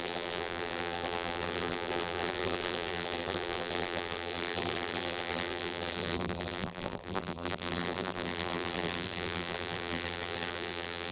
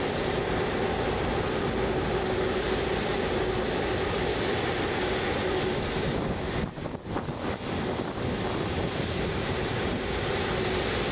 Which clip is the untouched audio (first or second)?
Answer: second